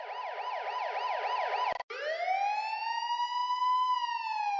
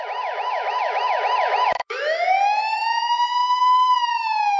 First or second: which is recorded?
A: first